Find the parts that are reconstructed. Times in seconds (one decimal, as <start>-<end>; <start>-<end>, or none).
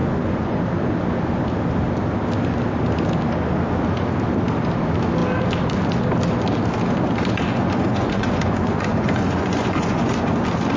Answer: 0.0-0.6; 7.5-10.2